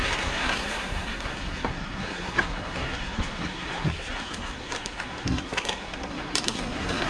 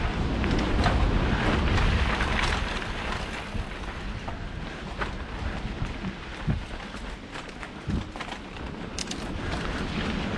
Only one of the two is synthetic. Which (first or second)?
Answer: first